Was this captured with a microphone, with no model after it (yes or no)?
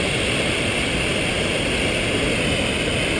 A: yes